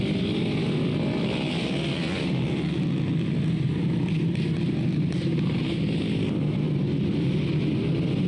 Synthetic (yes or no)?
no